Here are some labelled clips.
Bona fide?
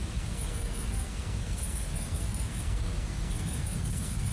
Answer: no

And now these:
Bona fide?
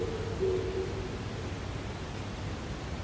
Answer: yes